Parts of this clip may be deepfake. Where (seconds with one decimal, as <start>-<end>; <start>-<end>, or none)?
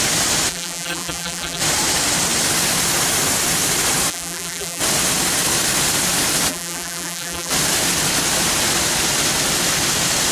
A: 0.5-1.6; 4.1-4.8; 6.5-7.5